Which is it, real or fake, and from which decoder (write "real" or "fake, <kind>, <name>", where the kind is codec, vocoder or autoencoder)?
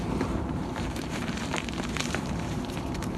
fake, vocoder, BigVGAN v2